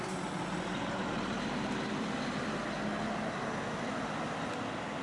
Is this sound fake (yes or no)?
no